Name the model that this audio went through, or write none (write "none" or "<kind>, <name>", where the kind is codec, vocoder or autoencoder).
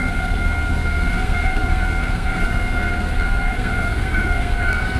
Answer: codec, SNAC